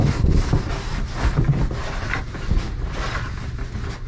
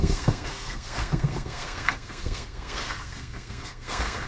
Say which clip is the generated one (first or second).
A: second